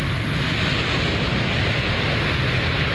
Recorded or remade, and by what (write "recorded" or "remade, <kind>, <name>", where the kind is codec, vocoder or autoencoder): recorded